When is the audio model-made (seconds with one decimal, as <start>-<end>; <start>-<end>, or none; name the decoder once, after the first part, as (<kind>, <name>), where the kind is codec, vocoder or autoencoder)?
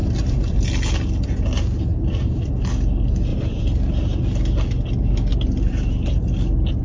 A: 0.0-0.6 (vocoder, BigVGAN v2); 1.9-2.5; 3.3-4.4; 5.3-6.2